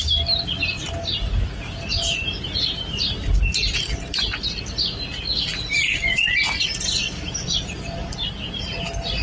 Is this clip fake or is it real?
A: real